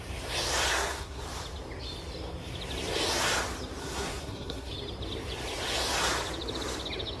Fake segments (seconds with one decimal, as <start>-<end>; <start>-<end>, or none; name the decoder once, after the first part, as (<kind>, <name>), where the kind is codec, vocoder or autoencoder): 0.7-1.2 (codec, SNAC); 3.8-4.7